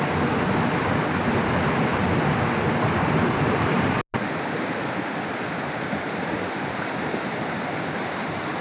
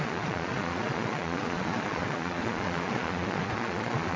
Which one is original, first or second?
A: first